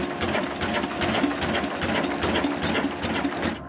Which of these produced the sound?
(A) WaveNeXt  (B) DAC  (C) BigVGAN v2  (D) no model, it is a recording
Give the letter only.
D